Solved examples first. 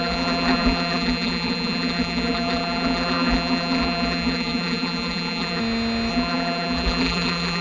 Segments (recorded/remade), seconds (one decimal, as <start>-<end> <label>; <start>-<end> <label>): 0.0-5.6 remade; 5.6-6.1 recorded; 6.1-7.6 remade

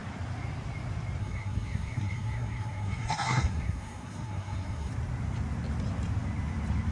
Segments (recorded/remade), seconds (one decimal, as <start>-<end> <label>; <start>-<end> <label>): 0.0-1.2 recorded; 1.2-4.9 remade; 4.9-6.9 recorded

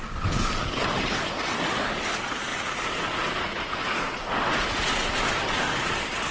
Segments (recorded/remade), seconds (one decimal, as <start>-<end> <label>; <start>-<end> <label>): 0.0-6.3 recorded